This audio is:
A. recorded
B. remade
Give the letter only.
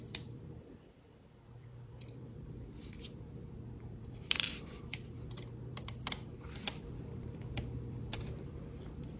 B